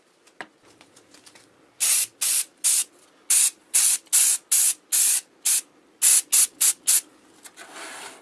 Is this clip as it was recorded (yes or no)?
yes